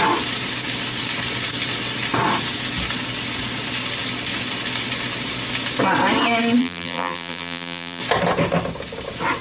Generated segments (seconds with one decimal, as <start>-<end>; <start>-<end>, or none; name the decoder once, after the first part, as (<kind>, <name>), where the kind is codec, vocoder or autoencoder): 6.6-8.0 (vocoder, BigVGAN v2)